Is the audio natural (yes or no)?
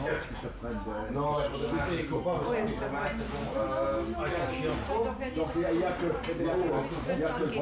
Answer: yes